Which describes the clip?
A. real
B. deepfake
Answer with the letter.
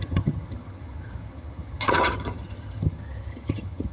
B